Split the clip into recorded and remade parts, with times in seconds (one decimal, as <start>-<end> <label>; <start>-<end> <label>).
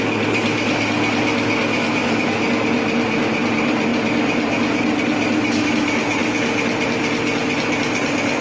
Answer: 0.0-8.4 recorded